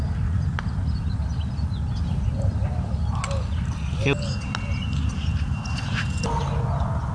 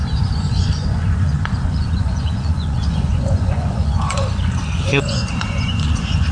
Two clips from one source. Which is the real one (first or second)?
first